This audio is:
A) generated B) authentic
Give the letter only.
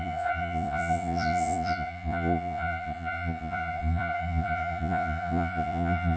A